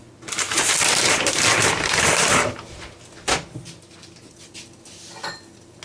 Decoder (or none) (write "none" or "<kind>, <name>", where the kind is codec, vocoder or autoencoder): none